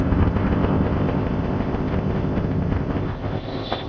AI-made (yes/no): yes